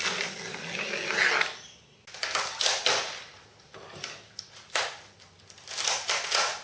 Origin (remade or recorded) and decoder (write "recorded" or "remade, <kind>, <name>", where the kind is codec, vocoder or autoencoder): recorded